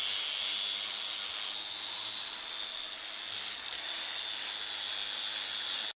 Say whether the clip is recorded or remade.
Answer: recorded